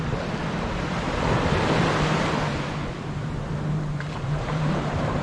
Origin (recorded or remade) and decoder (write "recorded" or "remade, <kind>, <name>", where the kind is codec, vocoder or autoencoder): remade, vocoder, BigVGAN v2